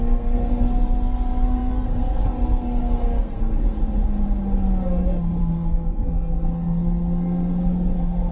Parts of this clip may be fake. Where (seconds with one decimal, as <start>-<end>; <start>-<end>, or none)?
0.0-3.8; 5.4-8.3